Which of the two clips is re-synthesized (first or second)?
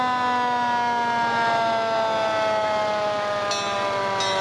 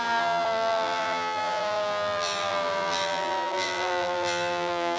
second